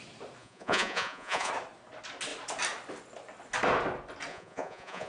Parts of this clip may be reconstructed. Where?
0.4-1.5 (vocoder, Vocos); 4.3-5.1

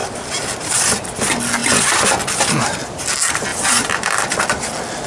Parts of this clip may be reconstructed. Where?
0.0-0.8 (vocoder, BigVGAN v2); 1.6-3.0

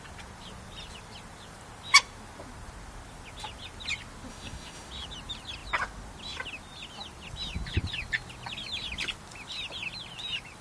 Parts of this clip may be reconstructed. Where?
4.3-4.9 (autoencoder, DAC-VAE)

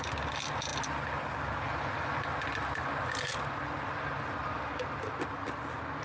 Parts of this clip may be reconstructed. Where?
none

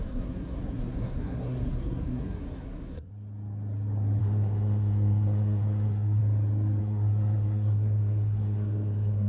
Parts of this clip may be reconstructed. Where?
0.0-3.1 (codec, SNAC); 4.2-6.2; 6.8-9.3

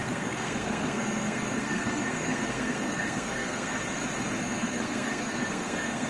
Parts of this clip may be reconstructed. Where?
0.0-3.8 (codec, SNAC); 4.4-6.1

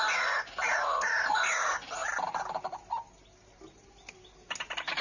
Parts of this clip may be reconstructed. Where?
none